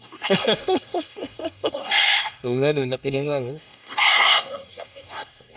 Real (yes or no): no